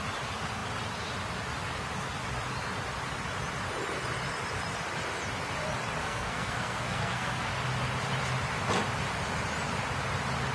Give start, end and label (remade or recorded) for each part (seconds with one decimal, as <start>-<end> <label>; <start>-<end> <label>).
0.0-6.0 recorded; 6.0-7.5 remade; 7.5-10.5 recorded